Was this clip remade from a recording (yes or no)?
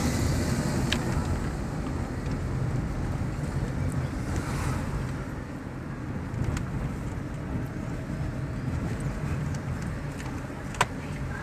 no